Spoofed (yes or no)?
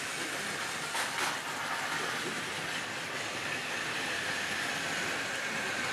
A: no